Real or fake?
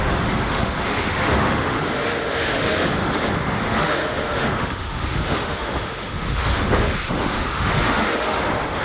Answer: fake